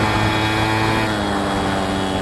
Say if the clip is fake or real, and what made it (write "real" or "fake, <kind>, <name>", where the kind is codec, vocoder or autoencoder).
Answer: real